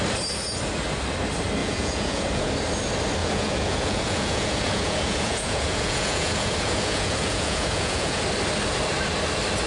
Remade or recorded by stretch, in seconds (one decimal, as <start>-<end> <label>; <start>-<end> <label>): 0.0-1.6 recorded; 1.6-2.5 remade; 2.5-3.2 recorded; 3.2-8.2 remade; 8.2-9.7 recorded